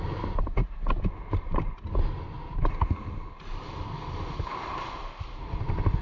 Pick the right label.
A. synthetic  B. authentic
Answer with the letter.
B